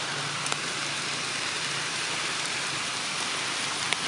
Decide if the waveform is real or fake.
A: real